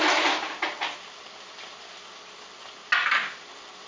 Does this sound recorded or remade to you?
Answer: recorded